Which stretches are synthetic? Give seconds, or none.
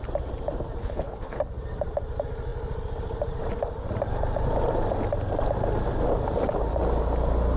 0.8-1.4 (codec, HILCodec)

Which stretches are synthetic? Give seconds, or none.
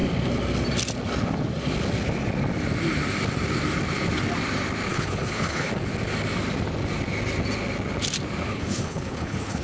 4.9-5.7 (codec, HILCodec); 8.5-9.6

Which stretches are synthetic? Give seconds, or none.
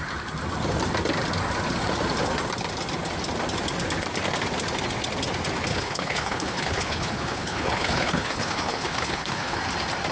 5.7-9.6 (codec, HILCodec)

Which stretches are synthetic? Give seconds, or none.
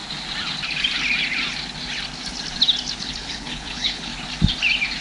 3.0-4.1 (codec, HILCodec)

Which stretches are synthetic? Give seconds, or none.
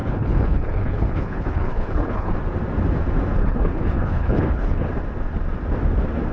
0.0-2.3 (codec, HILCodec); 3.4-4.9